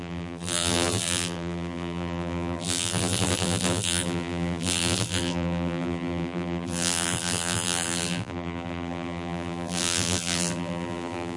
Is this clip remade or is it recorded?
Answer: remade